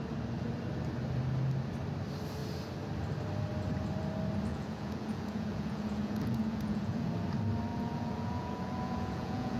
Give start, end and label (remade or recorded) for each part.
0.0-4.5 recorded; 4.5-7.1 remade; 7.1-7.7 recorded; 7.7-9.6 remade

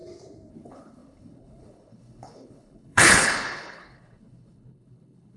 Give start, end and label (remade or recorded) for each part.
0.0-0.5 recorded; 0.5-5.4 remade

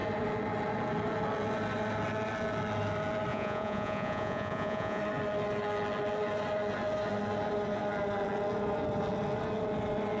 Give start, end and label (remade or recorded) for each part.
0.0-3.3 recorded; 3.3-5.0 remade; 5.0-10.2 recorded

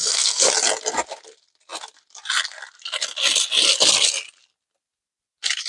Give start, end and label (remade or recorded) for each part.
0.0-0.5 remade; 0.5-5.7 recorded